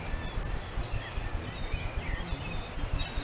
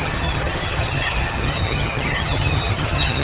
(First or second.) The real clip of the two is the first